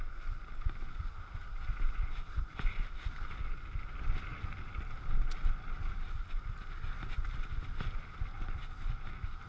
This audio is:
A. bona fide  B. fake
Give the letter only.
A